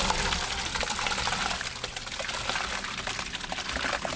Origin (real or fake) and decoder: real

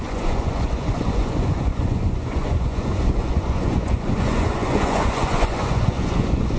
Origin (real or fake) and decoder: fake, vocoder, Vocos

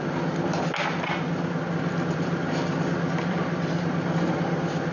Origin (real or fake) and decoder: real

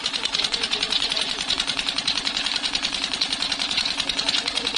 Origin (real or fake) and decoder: fake, vocoder, Vocos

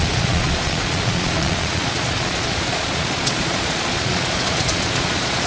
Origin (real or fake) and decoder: fake, vocoder, Vocos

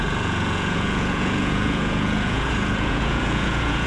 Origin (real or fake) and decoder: fake, vocoder, Vocos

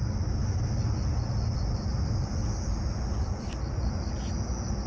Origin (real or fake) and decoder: real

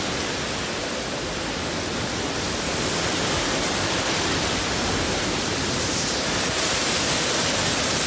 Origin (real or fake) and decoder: real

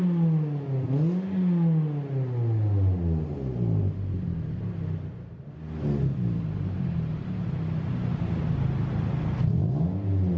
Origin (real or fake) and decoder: real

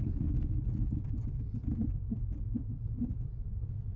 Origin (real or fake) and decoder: real